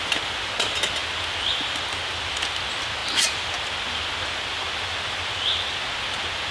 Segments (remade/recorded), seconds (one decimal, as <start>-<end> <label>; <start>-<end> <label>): 0.0-6.5 recorded